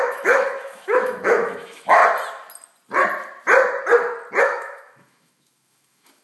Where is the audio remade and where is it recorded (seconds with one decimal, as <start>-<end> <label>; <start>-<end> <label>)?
0.0-2.0 remade; 2.0-4.4 recorded; 4.4-6.2 remade